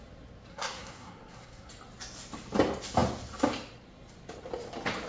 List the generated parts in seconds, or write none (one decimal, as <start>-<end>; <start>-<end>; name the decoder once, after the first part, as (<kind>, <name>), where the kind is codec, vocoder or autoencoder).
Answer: 0.5-1.7 (codec, SNAC)